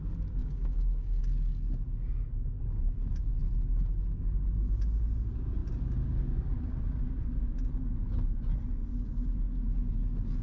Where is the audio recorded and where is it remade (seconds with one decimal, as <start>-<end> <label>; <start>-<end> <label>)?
0.0-0.4 recorded; 0.4-1.2 remade; 1.2-10.4 recorded